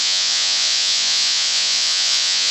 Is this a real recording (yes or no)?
no